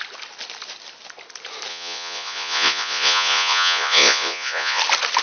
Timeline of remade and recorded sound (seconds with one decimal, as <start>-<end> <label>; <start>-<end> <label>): 0.0-1.7 recorded; 1.7-4.8 remade; 4.8-5.2 recorded